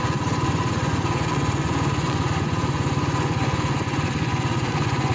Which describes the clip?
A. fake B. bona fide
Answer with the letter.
A